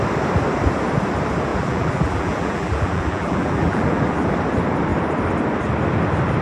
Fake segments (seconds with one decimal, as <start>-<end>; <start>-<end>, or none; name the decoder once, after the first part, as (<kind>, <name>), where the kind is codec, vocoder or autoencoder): 1.5-4.3 (vocoder, BigVGAN v2)

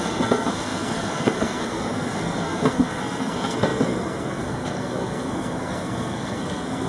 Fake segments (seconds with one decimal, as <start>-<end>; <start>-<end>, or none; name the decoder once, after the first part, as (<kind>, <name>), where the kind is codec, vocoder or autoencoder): 0.0-6.9 (codec, SNAC)